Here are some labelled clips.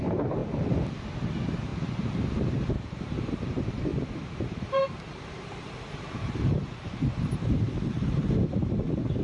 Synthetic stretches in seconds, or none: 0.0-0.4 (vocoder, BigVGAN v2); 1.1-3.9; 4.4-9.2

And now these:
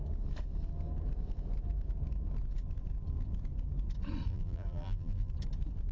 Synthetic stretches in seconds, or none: 4.3-5.3 (vocoder, BigVGAN v2)